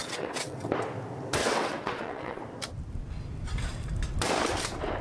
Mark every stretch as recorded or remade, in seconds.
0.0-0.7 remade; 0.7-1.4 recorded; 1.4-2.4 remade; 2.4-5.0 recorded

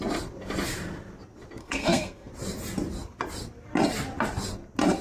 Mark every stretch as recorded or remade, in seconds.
0.0-1.6 recorded; 1.6-2.3 remade; 2.3-5.0 recorded

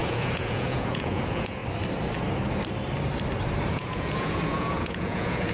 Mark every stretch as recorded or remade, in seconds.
0.0-1.6 remade; 1.6-3.7 recorded; 3.7-5.5 remade

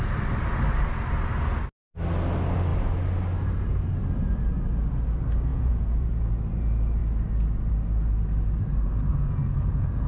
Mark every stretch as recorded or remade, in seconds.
0.0-5.5 recorded; 5.5-6.3 remade; 6.3-9.1 recorded; 9.1-10.1 remade

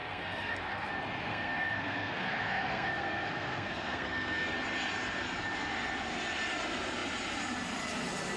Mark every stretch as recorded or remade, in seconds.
0.0-0.9 remade; 0.9-1.3 recorded; 1.3-4.5 remade; 4.5-8.4 recorded